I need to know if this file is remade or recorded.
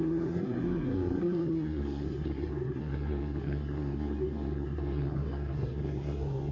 remade